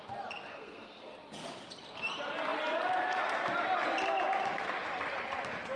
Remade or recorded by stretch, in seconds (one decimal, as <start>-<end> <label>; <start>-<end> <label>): 0.0-0.5 recorded; 0.5-1.1 remade; 1.1-5.8 recorded